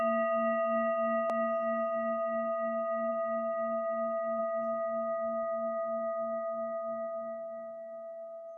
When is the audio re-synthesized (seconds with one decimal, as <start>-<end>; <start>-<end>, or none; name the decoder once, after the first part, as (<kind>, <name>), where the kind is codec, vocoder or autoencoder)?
none